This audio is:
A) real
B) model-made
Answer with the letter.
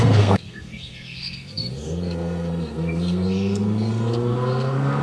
B